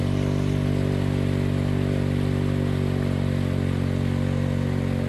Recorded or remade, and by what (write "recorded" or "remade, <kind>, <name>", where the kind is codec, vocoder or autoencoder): recorded